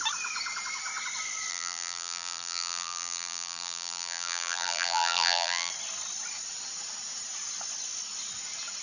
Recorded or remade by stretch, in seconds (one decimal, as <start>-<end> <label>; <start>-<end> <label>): 0.0-1.5 recorded; 1.5-5.7 remade; 5.7-8.8 recorded